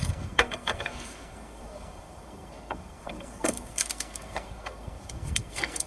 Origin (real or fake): fake